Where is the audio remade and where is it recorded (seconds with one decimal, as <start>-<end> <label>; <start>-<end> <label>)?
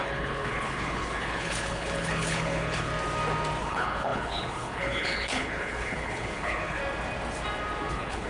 0.0-2.9 remade; 2.9-3.6 recorded; 3.6-6.8 remade; 6.8-7.9 recorded; 7.9-8.3 remade